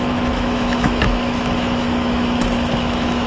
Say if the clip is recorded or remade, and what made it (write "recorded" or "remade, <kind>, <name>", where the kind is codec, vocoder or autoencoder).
remade, autoencoder, DAC-VAE